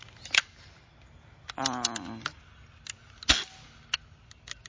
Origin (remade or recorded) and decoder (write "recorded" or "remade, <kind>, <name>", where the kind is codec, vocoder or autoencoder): recorded